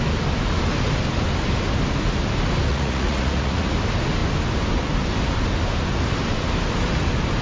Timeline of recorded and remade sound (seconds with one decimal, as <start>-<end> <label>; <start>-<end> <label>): 0.0-2.7 recorded; 2.7-3.7 remade; 3.7-7.4 recorded